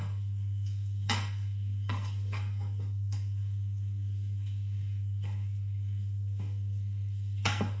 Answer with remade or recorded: remade